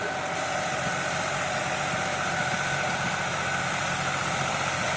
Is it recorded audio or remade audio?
remade